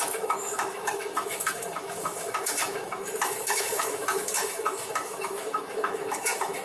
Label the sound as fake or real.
fake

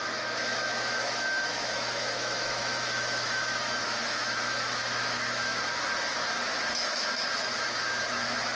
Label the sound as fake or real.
fake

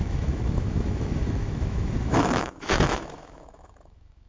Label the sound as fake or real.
fake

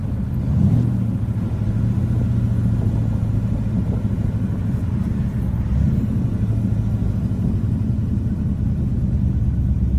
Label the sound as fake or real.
real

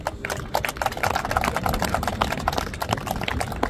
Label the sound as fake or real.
real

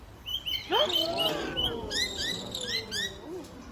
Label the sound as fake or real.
real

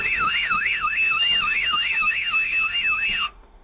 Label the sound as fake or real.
fake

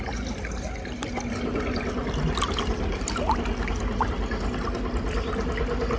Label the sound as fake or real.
real